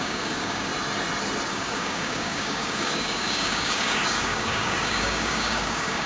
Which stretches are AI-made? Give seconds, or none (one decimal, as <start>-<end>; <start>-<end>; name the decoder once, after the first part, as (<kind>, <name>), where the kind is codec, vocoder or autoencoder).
0.0-0.7 (codec, DAC); 1.5-6.1